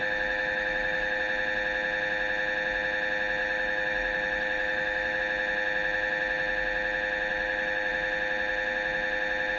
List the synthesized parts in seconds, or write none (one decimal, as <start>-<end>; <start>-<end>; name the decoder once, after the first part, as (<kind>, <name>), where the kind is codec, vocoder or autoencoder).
0.0-1.2 (autoencoder, DAC-VAE); 3.4-5.2; 7.3-7.9